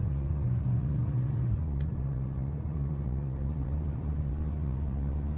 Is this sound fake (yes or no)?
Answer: yes